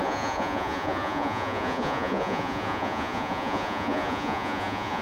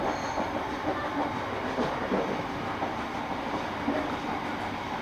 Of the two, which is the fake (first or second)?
first